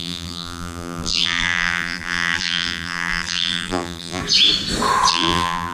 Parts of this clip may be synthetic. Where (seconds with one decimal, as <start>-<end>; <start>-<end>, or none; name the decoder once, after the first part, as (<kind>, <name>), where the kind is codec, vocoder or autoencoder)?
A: 0.0-4.2 (vocoder, BigVGAN v2); 5.1-5.7

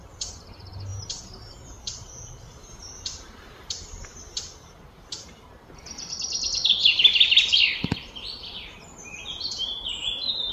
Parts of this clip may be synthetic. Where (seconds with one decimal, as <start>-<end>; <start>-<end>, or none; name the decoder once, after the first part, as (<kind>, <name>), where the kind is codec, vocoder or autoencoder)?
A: 0.9-6.1 (vocoder, BigVGAN v2); 9.3-9.9